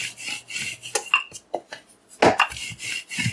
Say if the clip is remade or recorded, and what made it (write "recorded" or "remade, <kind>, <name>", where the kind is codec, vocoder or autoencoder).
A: recorded